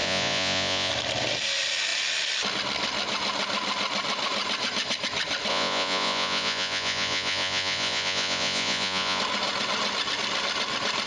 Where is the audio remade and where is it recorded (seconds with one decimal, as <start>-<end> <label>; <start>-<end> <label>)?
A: 0.0-0.9 remade; 0.9-5.5 recorded; 5.5-9.2 remade; 9.2-11.1 recorded